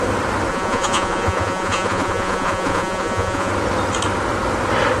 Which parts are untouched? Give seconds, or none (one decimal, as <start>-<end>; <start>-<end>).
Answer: 0.0-0.5; 3.5-5.0